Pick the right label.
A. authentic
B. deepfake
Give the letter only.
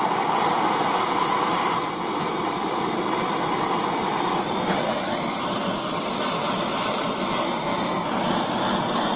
B